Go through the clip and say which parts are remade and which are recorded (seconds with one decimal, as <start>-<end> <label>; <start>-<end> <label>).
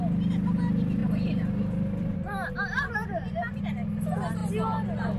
0.0-1.0 recorded; 1.0-3.6 remade; 3.6-5.2 recorded